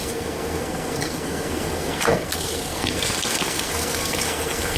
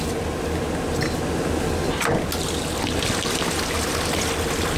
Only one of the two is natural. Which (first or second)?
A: second